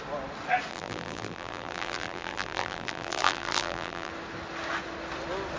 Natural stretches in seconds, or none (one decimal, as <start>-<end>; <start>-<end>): 0.0-0.7; 4.1-5.6